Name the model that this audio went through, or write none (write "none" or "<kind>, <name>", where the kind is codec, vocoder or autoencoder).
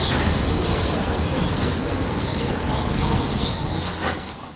codec, SNAC